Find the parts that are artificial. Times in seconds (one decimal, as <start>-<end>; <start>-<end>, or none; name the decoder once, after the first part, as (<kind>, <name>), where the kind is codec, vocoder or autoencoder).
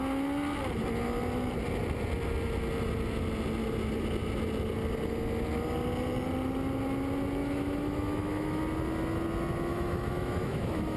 7.4-8.6 (autoencoder, DAC-VAE); 9.7-11.0